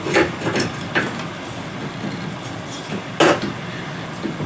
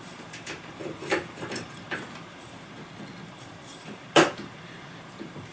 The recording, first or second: first